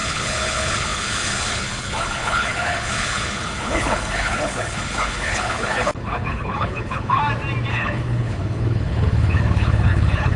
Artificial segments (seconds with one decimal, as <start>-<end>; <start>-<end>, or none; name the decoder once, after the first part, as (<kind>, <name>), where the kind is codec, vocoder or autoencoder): 0.0-7.2 (codec, HILCodec); 7.7-10.4